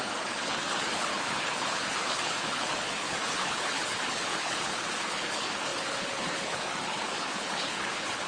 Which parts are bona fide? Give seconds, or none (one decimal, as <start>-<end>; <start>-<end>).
none